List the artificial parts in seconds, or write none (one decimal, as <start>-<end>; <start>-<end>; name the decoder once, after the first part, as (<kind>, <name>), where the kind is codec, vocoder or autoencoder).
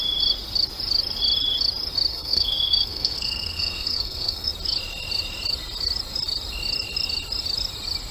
2.1-4.5 (codec, SNAC)